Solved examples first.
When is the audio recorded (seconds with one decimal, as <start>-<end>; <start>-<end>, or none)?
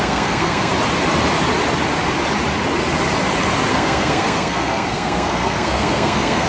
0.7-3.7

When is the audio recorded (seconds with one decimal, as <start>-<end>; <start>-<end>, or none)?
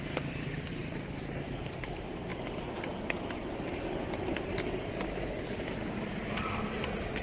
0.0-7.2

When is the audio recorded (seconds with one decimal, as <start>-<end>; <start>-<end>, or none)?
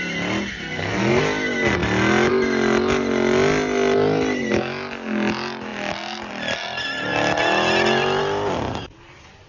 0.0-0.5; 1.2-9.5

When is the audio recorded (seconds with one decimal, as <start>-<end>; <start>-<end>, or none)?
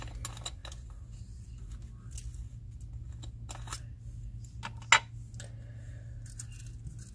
0.0-7.1